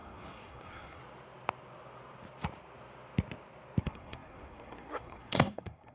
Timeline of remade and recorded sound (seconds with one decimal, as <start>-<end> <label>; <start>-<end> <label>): 0.0-1.0 remade; 1.0-3.8 recorded; 3.8-5.9 remade